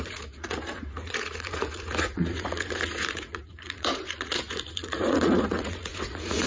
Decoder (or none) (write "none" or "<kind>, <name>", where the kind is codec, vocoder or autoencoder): vocoder, Vocos